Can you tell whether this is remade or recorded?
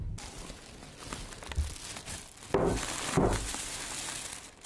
recorded